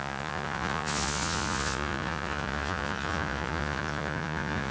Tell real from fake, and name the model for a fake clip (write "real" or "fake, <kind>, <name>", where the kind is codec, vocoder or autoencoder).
fake, vocoder, Vocos